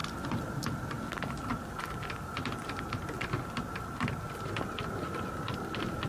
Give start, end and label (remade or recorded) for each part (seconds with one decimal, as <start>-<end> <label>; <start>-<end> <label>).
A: 0.0-6.1 recorded